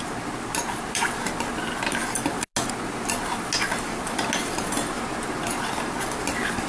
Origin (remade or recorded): recorded